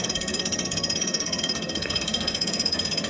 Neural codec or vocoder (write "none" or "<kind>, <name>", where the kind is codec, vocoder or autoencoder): codec, SNAC